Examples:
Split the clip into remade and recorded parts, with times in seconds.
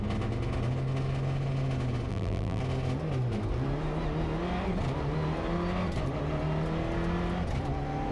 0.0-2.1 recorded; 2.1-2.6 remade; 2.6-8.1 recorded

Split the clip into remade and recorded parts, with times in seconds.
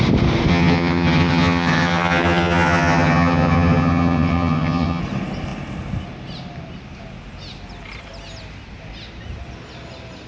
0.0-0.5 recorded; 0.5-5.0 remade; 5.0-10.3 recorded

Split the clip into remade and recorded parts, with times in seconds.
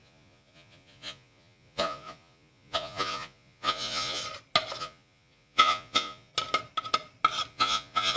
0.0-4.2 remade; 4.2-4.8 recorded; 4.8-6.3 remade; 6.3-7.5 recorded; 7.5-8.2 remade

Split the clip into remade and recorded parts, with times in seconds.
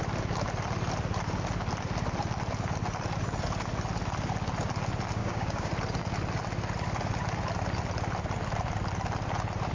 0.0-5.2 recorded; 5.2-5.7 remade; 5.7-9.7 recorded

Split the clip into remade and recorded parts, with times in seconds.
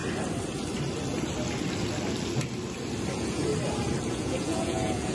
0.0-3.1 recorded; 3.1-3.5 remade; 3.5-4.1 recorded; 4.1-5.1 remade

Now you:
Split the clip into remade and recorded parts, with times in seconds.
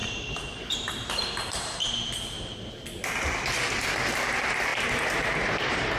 0.0-2.7 remade; 2.7-4.7 recorded; 4.7-6.0 remade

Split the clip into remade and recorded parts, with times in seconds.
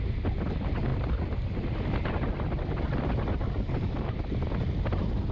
0.0-5.3 recorded